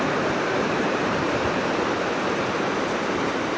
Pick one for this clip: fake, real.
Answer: fake